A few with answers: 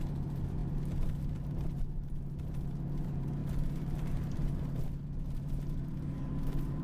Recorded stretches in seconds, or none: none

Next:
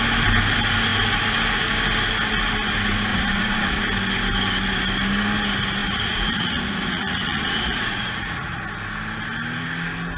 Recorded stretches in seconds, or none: 0.0-3.1; 3.8-5.8; 8.6-10.2

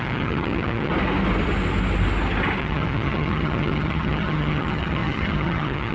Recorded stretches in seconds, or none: 0.9-2.6

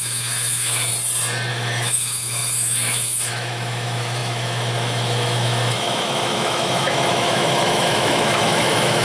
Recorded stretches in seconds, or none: 0.9-1.5

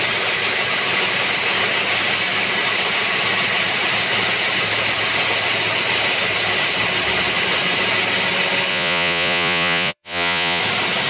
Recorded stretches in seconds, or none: 0.0-8.7; 10.6-11.1